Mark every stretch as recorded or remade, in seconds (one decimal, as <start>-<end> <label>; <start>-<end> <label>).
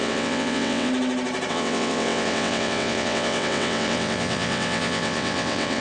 0.0-0.9 remade; 0.9-1.5 recorded; 1.5-5.8 remade